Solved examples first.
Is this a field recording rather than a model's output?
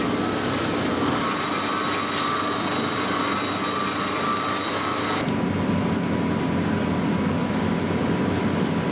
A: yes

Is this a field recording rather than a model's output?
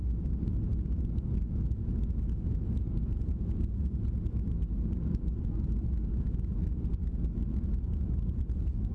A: yes